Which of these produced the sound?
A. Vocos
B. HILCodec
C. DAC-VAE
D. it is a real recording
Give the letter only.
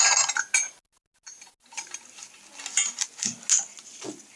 D